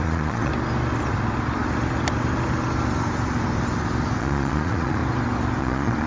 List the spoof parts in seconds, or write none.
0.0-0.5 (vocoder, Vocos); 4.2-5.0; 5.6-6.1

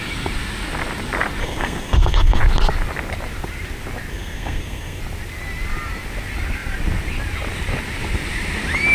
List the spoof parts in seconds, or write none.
1.4-2.4 (codec, SNAC); 4.1-5.0

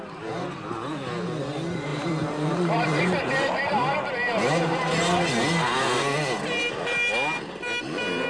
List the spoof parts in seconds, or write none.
1.9-3.0 (vocoder, BigVGAN v2)